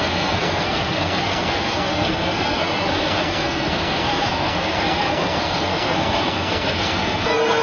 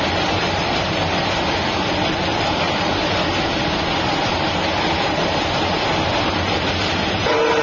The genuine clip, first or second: second